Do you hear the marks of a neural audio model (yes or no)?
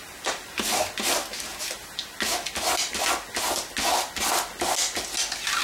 no